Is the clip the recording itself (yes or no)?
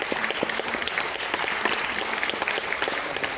yes